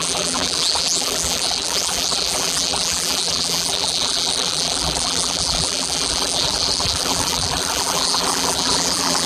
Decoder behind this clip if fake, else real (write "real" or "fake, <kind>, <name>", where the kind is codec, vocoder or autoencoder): fake, vocoder, BigVGAN v2